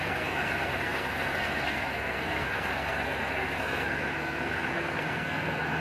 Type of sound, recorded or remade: remade